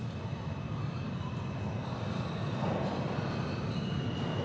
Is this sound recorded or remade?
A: recorded